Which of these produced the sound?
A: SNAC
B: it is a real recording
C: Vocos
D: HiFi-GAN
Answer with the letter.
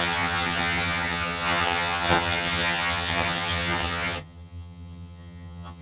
D